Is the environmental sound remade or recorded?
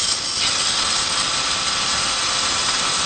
recorded